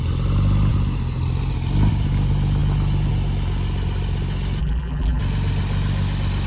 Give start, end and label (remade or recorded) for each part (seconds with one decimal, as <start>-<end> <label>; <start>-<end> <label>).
0.0-4.6 recorded; 4.6-5.2 remade; 5.2-6.5 recorded